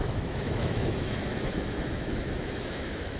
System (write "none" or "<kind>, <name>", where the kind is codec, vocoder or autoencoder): autoencoder, DAC-VAE